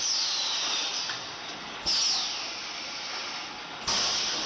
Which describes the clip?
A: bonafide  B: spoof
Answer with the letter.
A